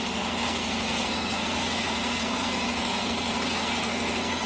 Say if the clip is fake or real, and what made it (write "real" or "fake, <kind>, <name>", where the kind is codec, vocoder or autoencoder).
fake, codec, SNAC